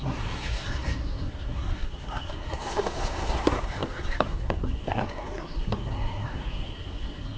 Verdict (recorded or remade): remade